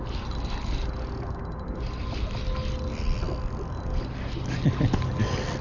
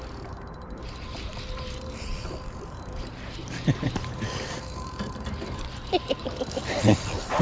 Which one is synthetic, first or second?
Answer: second